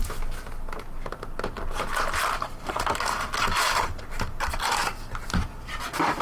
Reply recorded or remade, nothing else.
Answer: recorded